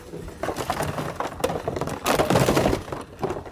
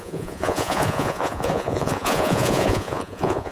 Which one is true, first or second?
first